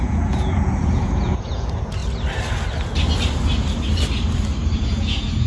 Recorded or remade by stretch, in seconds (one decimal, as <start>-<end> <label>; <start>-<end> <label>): 0.0-2.0 remade; 2.0-4.8 recorded; 4.8-5.5 remade